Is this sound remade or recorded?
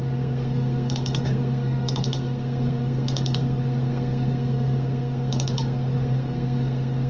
remade